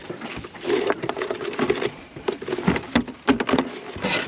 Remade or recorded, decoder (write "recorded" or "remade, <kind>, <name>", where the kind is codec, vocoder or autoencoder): recorded